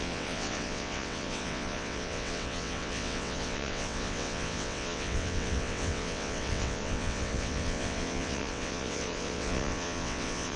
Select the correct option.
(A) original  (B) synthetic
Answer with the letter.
B